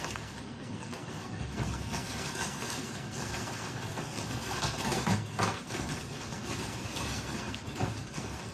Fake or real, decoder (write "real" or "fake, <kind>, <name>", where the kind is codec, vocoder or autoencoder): fake, codec, SNAC